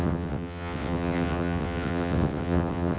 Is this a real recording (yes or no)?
no